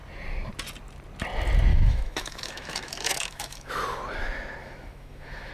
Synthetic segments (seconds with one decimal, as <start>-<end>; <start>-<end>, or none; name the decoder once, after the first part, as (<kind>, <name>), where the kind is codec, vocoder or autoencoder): 1.7-3.7 (autoencoder, DAC-VAE); 4.6-5.5